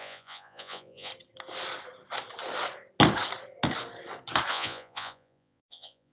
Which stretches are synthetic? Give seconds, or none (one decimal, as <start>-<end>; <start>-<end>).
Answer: 0.0-1.1; 4.5-6.1